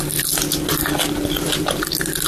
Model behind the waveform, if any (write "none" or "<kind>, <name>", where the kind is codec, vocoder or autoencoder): none